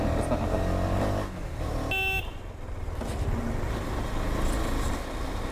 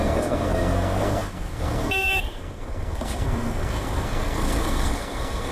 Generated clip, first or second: second